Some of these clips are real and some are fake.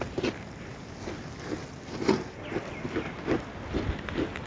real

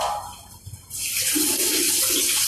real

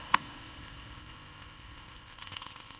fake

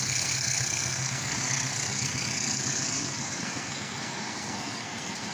fake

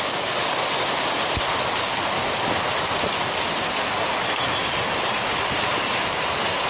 real